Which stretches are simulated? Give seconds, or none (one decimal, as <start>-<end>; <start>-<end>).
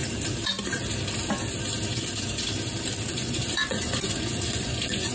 3.1-5.1